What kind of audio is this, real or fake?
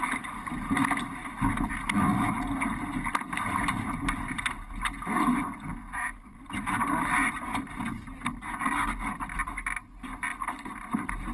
real